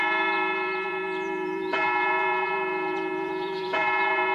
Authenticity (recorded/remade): remade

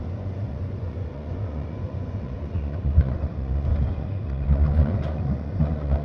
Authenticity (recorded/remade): remade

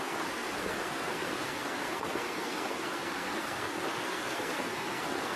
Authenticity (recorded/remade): remade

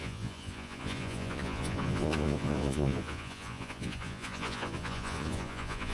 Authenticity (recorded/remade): remade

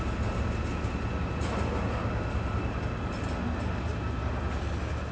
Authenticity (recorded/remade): recorded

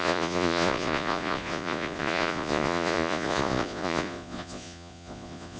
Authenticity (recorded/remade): remade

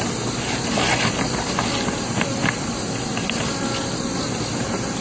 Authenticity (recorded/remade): recorded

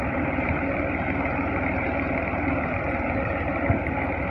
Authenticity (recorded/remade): remade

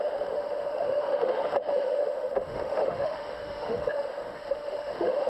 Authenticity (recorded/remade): remade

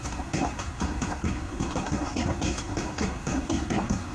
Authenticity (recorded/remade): remade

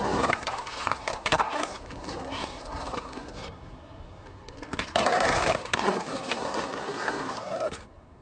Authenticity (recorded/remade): remade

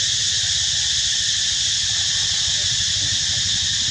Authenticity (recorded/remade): recorded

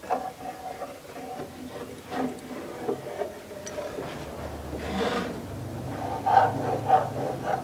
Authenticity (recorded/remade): recorded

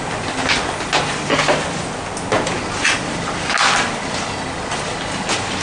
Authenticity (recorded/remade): recorded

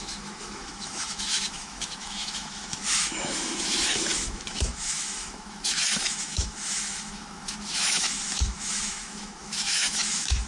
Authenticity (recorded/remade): remade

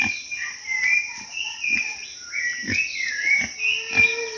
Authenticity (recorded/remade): recorded